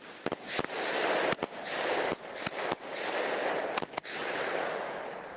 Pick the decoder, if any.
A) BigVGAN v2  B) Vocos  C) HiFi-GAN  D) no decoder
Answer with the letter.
D